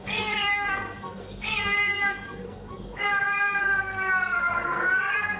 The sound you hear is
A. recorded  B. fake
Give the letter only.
B